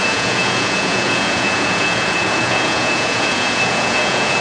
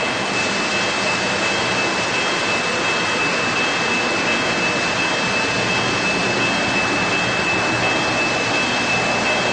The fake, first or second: first